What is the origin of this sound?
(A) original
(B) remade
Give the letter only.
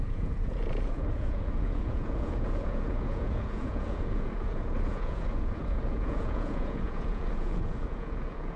B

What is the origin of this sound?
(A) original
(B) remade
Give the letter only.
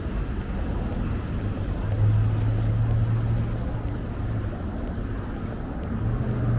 A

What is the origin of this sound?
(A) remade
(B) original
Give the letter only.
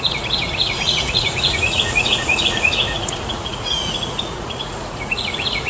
A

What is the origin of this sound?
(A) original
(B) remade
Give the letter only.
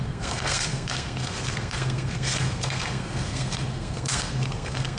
B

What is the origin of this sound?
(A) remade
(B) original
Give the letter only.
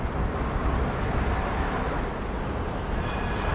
B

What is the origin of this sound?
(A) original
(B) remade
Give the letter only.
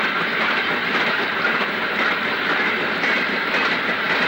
A